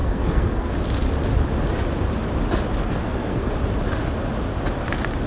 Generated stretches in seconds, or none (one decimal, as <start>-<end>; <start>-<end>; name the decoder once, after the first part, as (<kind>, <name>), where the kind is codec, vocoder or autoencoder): 0.0-0.7 (codec, SNAC); 2.8-3.5